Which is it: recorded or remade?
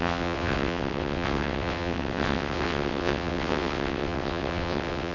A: remade